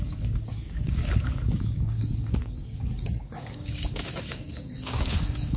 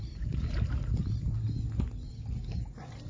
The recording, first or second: second